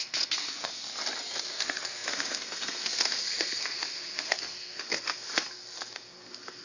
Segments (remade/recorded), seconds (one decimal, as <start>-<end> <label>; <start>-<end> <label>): 0.0-0.9 remade; 0.9-1.4 recorded; 1.4-6.6 remade